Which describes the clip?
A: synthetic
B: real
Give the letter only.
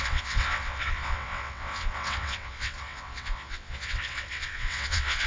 A